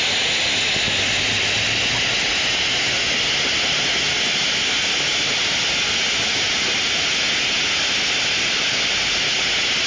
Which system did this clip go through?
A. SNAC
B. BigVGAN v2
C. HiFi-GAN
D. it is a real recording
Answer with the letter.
D